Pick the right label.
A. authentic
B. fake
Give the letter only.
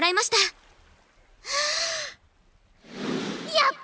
A